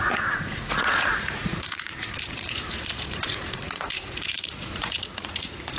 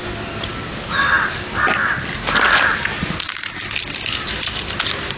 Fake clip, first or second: first